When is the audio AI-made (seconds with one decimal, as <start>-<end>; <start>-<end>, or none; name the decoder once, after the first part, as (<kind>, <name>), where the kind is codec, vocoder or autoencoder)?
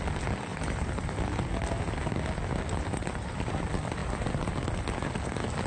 0.5-1.2 (vocoder, BigVGAN v2); 3.0-3.6; 4.0-4.6